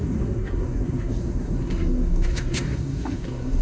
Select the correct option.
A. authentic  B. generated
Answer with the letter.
B